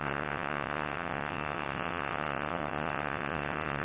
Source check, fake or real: fake